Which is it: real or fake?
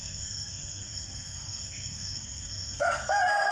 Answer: fake